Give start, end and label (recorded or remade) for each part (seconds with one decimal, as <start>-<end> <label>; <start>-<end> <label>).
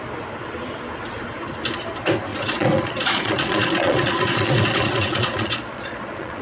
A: 0.0-2.3 recorded; 2.3-6.4 remade